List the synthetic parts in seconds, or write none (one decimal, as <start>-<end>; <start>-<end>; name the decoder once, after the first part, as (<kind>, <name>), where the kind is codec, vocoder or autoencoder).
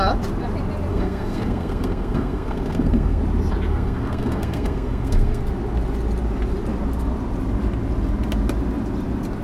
0.9-3.2 (codec, SNAC); 3.7-5.4